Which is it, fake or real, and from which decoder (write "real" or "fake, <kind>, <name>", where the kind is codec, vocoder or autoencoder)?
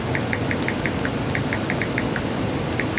real